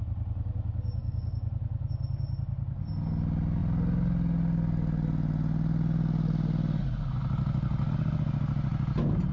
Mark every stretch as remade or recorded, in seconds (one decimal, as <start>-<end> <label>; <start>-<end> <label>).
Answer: 0.0-1.0 recorded; 1.0-1.5 remade; 1.5-9.3 recorded

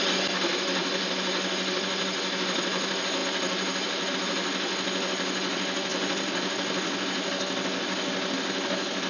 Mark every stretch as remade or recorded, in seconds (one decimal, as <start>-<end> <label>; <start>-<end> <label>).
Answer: 0.0-9.1 recorded

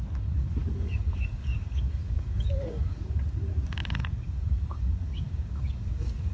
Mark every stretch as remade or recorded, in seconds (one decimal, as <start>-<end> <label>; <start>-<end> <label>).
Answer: 0.0-6.3 remade